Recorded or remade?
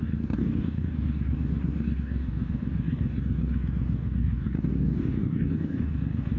remade